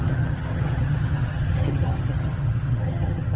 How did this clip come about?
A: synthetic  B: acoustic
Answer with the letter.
A